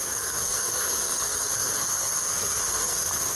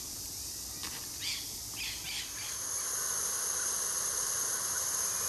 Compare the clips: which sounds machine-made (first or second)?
first